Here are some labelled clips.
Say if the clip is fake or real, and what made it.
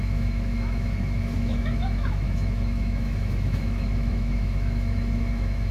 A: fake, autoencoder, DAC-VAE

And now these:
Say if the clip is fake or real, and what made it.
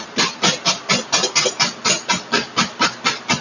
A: real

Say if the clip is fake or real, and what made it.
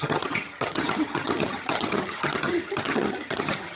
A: fake, vocoder, HiFi-GAN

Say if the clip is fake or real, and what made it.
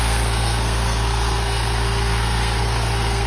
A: fake, codec, SNAC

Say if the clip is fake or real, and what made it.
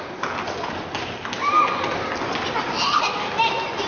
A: real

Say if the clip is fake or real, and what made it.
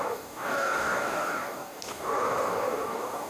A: fake, codec, DAC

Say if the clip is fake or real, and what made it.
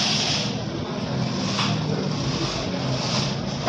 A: real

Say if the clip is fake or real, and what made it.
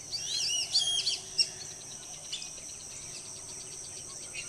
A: real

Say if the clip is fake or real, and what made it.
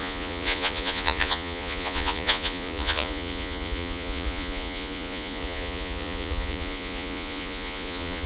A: fake, vocoder, Vocos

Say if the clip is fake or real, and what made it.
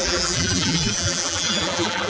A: fake, vocoder, BigVGAN v2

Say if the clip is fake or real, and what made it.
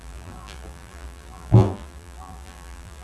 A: fake, vocoder, BigVGAN v2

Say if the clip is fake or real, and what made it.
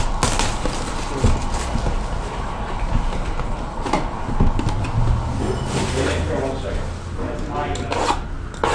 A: real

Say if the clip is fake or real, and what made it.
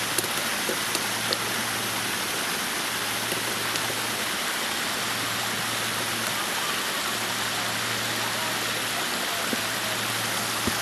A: real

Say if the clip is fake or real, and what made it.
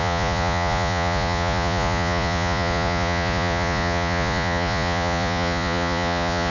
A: fake, vocoder, Vocos